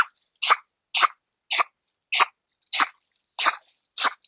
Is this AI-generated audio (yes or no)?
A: no